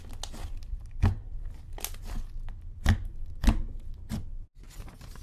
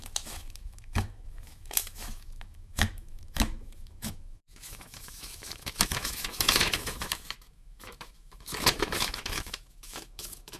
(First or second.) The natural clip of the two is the first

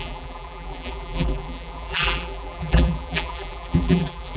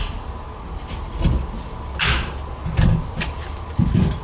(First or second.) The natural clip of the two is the second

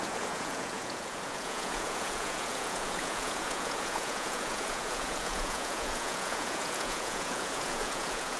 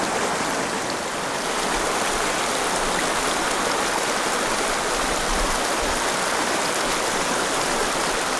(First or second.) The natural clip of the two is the second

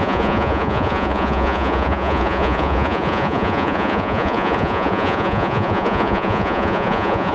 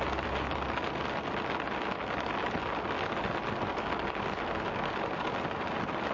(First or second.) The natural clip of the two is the second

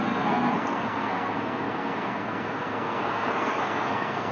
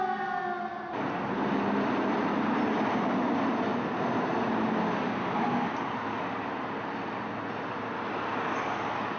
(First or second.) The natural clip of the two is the second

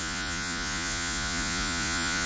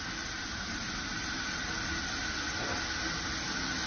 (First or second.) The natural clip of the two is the second